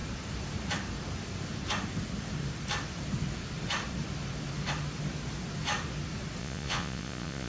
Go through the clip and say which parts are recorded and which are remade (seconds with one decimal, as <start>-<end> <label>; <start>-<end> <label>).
0.0-6.4 recorded; 6.4-7.5 remade